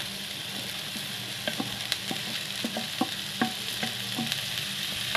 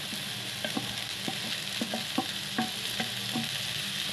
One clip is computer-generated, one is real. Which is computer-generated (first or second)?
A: first